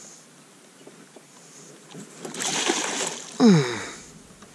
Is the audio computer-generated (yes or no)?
no